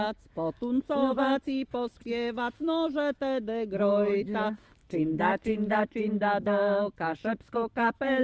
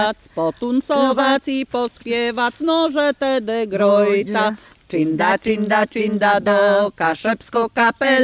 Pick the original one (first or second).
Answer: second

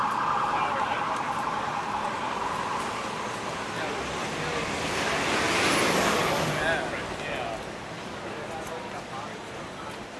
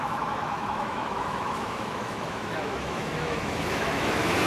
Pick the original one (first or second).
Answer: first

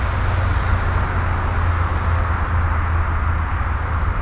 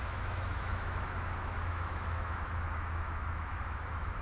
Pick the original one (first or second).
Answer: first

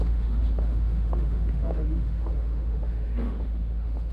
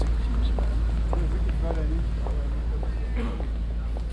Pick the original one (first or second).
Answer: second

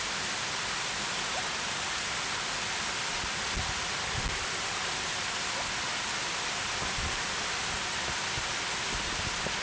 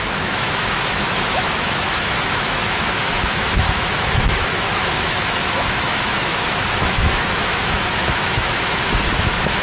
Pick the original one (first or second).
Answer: first